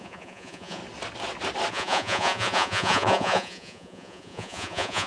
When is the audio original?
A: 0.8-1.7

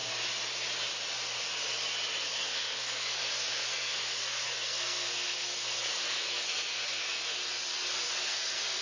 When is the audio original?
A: 0.0-2.2; 7.4-7.9

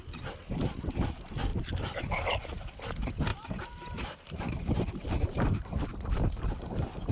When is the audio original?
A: 0.0-1.5; 2.0-3.3

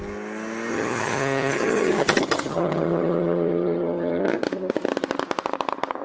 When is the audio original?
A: 0.0-0.7; 4.2-6.0

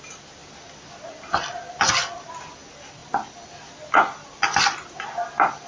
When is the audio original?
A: 0.0-5.7

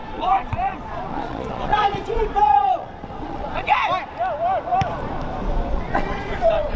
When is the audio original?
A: 3.8-5.7

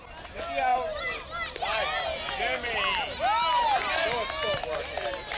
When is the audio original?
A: 0.0-5.4

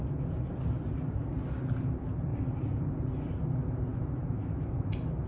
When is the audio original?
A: 0.0-5.3